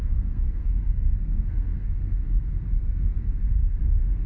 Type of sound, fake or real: fake